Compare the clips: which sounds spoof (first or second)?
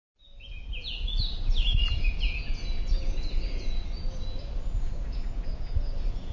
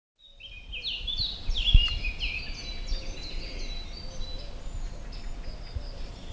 first